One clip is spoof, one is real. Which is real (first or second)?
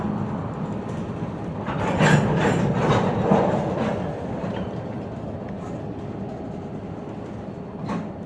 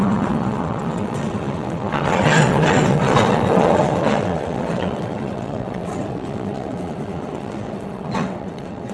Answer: first